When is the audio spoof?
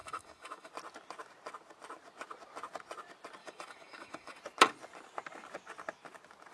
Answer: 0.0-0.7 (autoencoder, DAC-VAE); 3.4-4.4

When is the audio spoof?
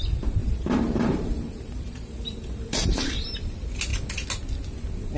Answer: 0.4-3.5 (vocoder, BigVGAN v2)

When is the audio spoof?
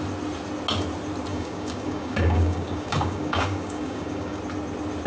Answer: 1.3-4.4 (codec, DAC)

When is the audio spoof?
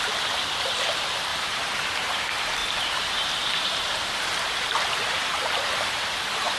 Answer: 1.3-2.2 (vocoder, BigVGAN v2); 2.6-6.6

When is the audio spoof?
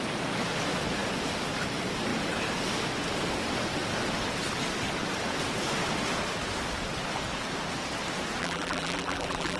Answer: 8.4-9.6 (vocoder, BigVGAN v2)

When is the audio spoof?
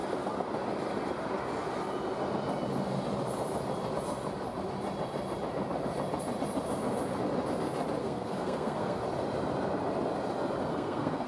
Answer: 8.0-9.0 (codec, SNAC); 10.7-11.3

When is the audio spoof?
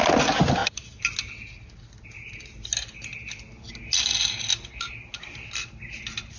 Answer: none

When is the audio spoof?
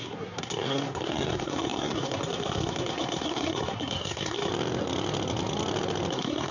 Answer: 0.0-4.5 (codec, SNAC); 6.1-6.5